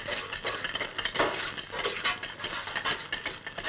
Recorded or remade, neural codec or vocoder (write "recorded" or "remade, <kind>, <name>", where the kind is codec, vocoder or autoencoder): recorded